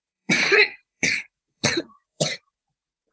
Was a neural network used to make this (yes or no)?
yes